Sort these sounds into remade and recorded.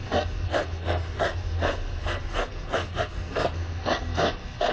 remade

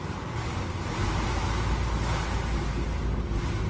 recorded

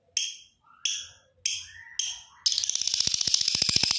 recorded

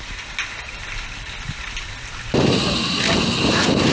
recorded